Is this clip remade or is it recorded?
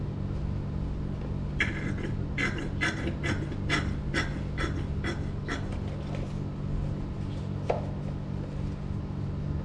recorded